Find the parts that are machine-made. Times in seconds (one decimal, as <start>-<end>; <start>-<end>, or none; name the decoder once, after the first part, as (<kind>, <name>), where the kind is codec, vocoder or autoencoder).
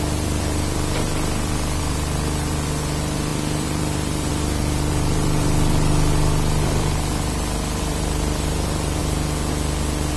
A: 0.0-9.0 (vocoder, BigVGAN v2)